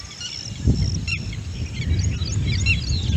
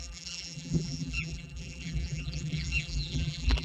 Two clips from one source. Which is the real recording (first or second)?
first